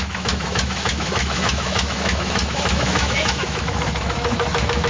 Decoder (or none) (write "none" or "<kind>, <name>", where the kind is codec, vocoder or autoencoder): autoencoder, DAC-VAE